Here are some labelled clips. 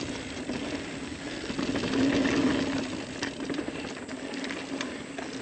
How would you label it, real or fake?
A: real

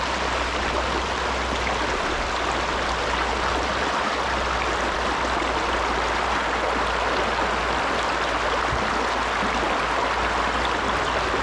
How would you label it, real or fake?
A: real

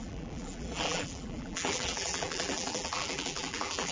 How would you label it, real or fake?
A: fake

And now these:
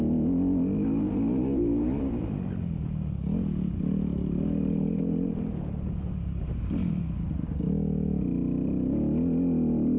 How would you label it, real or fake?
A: real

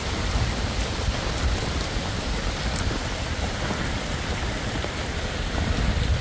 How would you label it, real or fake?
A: fake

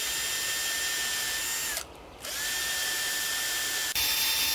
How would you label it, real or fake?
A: real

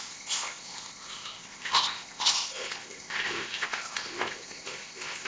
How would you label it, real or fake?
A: fake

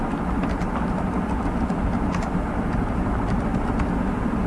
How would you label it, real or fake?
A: real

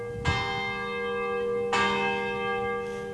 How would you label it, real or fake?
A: real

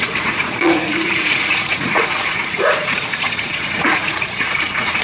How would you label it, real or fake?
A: fake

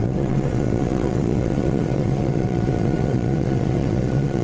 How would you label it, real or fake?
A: fake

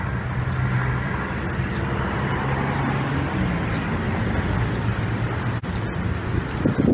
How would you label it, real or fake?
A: real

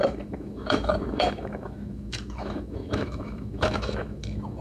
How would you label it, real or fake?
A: fake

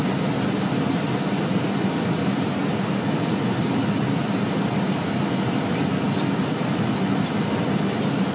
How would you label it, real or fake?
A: real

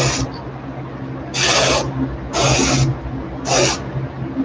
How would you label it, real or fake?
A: real